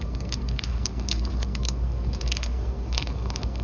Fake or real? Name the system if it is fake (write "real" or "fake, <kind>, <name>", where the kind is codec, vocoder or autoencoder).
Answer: fake, codec, SNAC